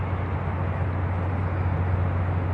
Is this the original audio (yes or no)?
yes